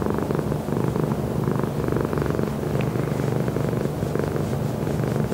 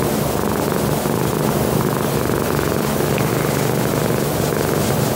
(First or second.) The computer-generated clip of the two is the second